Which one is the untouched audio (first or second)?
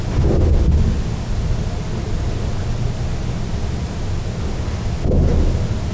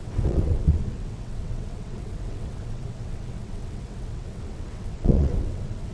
first